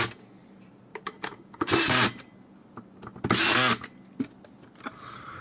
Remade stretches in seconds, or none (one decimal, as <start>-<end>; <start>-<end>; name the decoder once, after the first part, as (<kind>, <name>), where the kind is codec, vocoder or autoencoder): 0.4-2.3 (vocoder, BigVGAN v2)